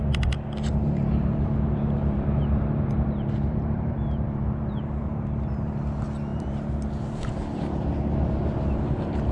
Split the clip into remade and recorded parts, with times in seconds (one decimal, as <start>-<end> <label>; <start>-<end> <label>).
0.0-0.7 recorded; 0.7-5.7 remade; 5.7-6.3 recorded; 6.3-7.2 remade; 7.2-9.3 recorded